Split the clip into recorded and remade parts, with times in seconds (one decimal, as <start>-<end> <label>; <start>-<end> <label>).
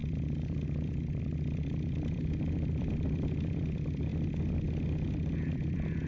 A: 0.0-4.1 remade; 4.1-5.4 recorded; 5.4-6.1 remade